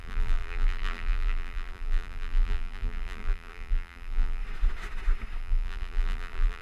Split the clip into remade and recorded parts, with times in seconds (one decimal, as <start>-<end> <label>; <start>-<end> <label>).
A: 0.0-4.4 remade; 4.4-5.4 recorded; 5.4-6.6 remade